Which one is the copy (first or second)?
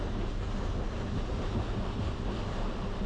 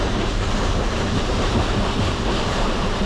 second